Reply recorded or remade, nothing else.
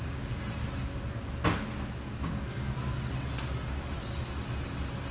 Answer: recorded